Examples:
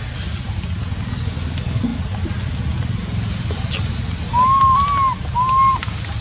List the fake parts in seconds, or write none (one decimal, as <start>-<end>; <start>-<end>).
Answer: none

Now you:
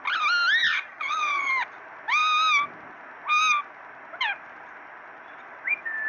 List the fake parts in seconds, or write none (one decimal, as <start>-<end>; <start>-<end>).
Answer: 0.7-1.5

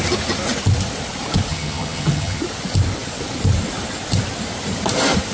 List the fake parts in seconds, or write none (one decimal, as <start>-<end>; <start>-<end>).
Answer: 1.5-2.4

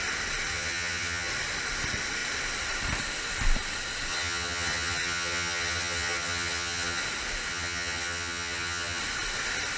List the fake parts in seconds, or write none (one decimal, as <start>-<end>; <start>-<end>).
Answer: 0.5-1.3; 4.1-7.0; 7.5-9.0

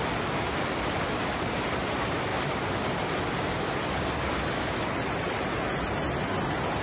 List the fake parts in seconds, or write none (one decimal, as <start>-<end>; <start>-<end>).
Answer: none

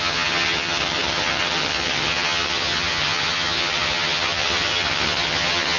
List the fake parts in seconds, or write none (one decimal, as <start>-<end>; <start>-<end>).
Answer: 0.0-5.8